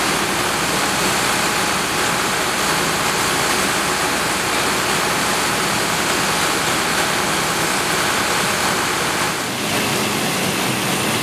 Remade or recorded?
recorded